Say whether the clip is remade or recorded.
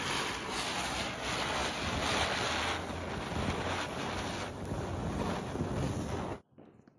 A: recorded